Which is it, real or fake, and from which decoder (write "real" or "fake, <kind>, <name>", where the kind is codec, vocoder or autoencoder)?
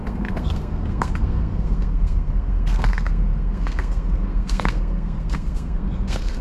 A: fake, codec, SNAC